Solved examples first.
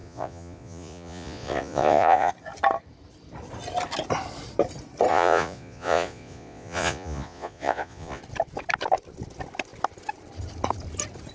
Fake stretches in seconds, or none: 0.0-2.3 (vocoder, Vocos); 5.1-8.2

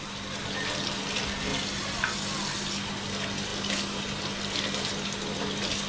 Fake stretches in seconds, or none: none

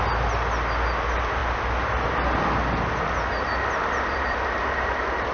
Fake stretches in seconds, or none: none

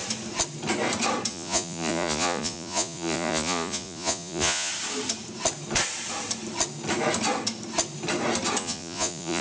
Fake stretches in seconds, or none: 1.3-4.7 (vocoder, Vocos); 8.6-9.4

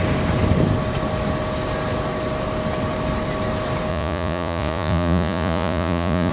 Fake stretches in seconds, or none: 3.9-6.3 (vocoder, Vocos)

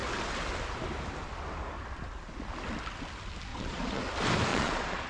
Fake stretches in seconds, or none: 3.5-4.0 (vocoder, Vocos); 4.5-5.1

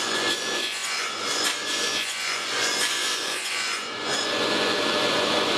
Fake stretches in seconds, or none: 0.0-5.6 (vocoder, Vocos)

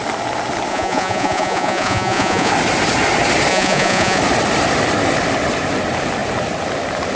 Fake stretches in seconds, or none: 0.7-2.5 (vocoder, Vocos); 3.5-4.2